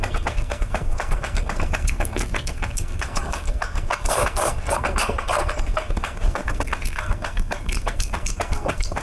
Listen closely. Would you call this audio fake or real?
fake